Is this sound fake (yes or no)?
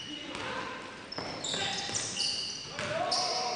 no